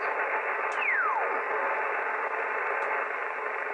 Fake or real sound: real